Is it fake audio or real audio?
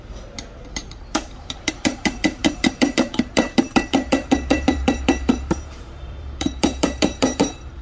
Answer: fake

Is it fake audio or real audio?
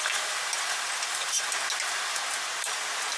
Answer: real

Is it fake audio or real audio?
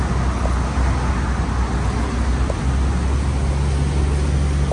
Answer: real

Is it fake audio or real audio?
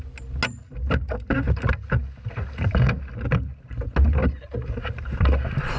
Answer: real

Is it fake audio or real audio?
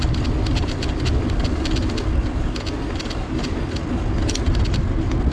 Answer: real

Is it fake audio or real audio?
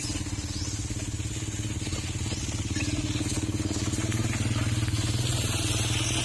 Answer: real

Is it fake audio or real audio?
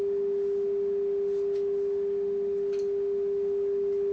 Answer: real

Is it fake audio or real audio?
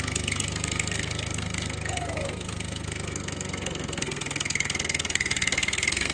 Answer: fake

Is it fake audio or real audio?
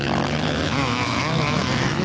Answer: fake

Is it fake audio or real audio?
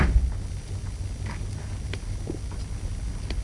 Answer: real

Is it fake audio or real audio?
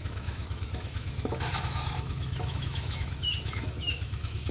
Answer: fake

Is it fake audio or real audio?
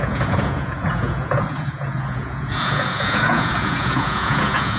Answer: fake